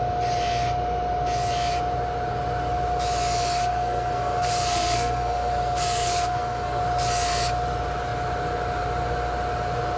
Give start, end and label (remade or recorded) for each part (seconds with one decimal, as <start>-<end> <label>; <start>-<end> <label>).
0.0-3.6 recorded; 3.6-6.8 remade; 6.8-10.0 recorded